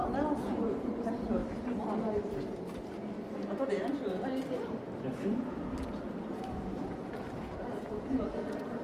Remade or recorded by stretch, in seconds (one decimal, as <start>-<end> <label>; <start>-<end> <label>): 0.0-1.4 remade; 1.4-6.4 recorded; 6.4-8.8 remade